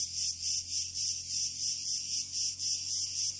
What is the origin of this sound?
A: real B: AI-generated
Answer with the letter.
A